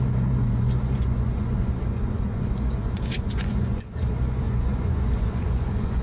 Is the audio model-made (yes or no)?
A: yes